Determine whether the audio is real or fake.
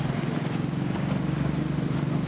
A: real